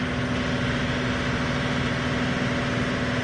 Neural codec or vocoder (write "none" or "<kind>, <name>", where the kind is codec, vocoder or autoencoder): none